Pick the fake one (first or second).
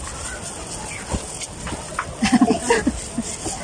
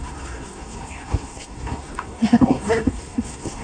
second